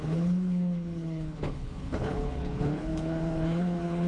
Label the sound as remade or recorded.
remade